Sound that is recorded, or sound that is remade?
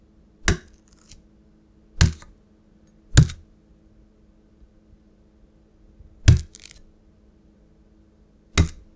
recorded